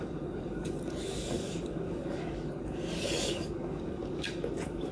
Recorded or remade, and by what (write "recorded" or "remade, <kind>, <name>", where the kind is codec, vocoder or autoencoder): remade, codec, DAC